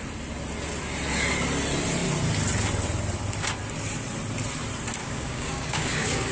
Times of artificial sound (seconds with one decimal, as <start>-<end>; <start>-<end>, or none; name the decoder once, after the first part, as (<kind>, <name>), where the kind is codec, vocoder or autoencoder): 5.0-6.3 (codec, DAC)